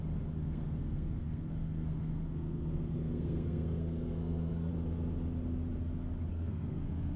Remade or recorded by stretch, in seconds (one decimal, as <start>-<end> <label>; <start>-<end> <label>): 0.0-0.4 recorded; 0.4-4.7 remade; 4.7-6.3 recorded; 6.3-7.2 remade